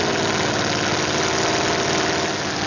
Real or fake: real